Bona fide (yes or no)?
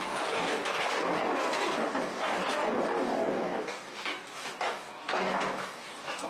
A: no